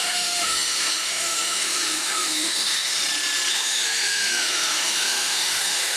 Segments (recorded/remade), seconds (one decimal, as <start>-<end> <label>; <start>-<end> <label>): 0.0-3.0 remade; 3.0-3.5 recorded; 3.5-6.0 remade